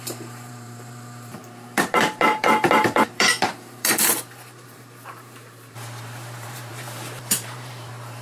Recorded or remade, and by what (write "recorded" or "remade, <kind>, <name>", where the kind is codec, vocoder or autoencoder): remade, vocoder, BigVGAN v2